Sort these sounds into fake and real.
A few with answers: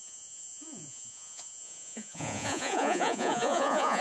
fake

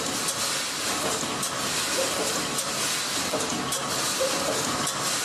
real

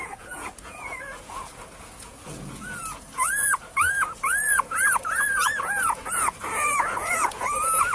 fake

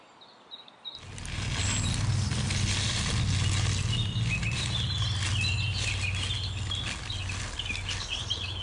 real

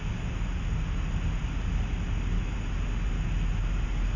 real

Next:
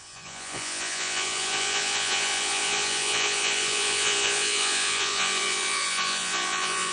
fake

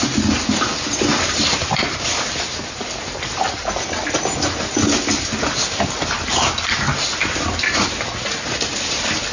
real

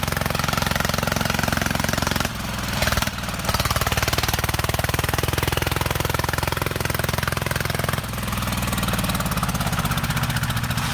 real